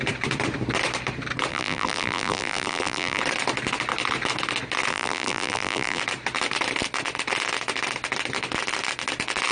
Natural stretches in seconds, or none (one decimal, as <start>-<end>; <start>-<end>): 0.0-1.5; 3.2-4.9; 6.0-9.5